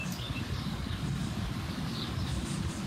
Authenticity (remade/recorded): remade